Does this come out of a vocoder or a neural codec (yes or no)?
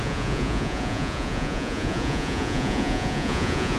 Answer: yes